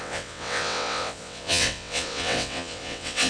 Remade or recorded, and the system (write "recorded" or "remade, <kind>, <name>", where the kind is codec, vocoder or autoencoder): remade, vocoder, WaveNeXt